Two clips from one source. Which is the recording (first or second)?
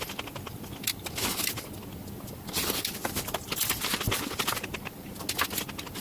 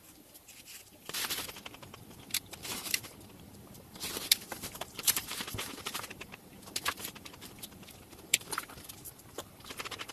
first